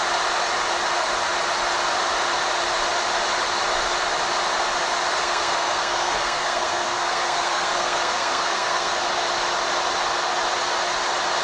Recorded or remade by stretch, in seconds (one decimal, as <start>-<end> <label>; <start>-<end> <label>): 0.0-5.2 recorded; 5.2-9.0 remade; 9.0-11.4 recorded